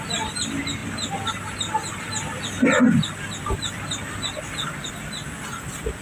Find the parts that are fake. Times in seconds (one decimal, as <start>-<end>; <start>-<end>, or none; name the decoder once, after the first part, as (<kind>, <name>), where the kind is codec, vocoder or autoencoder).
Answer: none